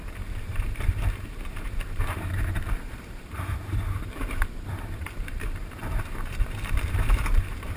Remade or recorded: remade